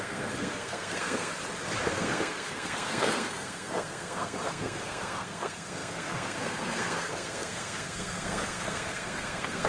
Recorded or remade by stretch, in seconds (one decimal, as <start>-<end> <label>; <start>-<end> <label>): 0.0-1.3 remade; 1.3-1.9 recorded; 1.9-9.7 remade